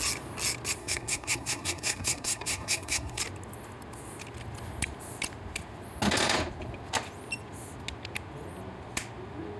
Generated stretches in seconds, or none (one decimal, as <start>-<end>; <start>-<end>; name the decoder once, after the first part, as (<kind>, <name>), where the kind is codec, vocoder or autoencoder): 0.8-3.2 (codec, SNAC)